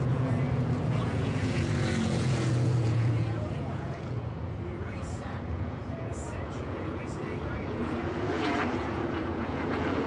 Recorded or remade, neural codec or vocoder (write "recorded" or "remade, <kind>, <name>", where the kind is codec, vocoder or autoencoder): remade, vocoder, Vocos